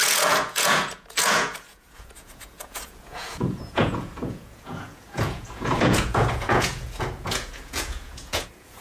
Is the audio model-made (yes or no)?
yes